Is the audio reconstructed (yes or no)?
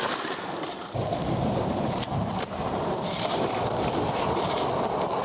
yes